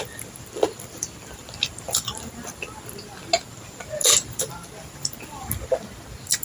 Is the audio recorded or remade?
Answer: recorded